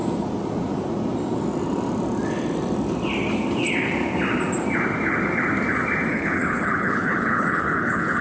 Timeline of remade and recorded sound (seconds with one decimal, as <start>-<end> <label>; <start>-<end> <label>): 0.0-6.1 recorded; 6.1-8.2 remade